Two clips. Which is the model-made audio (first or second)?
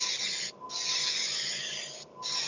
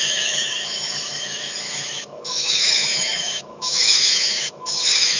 second